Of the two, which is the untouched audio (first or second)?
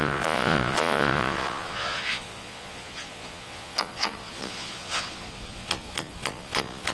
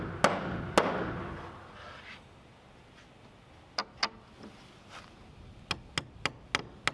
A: second